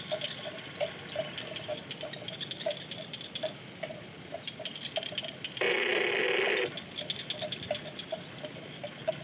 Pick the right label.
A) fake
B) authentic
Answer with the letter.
B